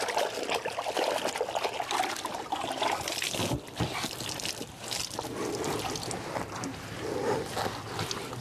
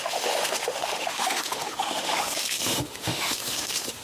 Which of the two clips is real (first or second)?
first